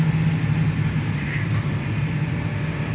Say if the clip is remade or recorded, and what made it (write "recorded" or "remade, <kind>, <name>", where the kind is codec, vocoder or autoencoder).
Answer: recorded